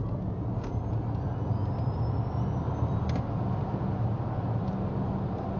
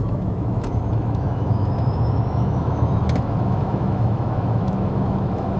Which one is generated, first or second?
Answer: second